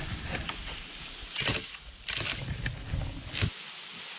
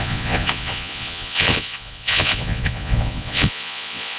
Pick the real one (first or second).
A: first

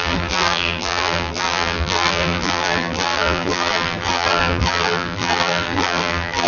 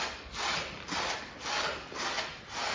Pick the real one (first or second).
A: second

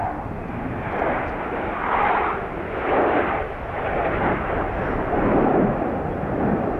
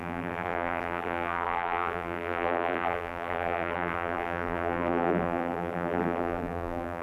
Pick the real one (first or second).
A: first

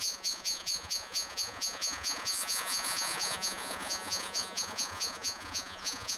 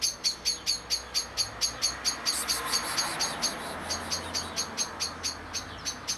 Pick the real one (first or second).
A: second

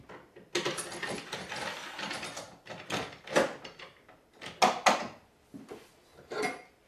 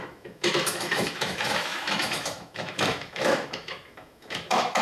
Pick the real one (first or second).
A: first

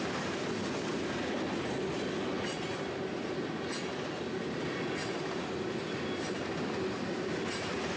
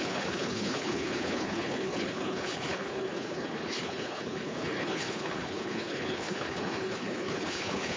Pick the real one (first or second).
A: first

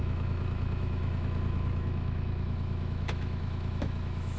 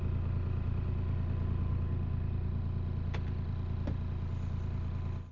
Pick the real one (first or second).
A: second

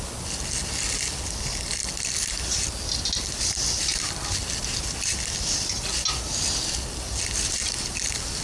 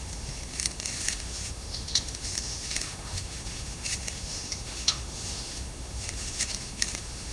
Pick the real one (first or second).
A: first